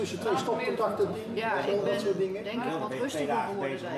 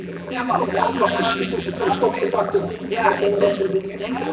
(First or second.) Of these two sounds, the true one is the first